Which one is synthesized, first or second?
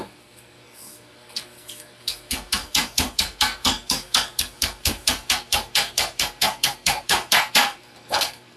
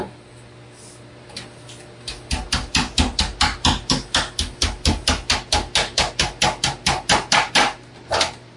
first